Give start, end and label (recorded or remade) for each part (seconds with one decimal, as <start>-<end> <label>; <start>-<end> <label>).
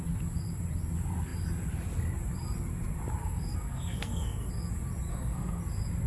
0.0-3.2 recorded; 3.2-4.5 remade; 4.5-5.1 recorded; 5.1-5.6 remade; 5.6-6.1 recorded